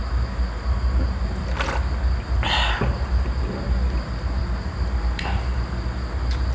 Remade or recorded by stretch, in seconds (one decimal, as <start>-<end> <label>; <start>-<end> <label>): 0.0-6.5 recorded